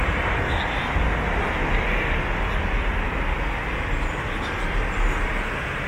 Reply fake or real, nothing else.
real